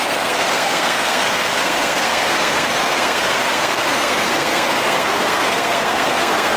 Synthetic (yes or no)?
yes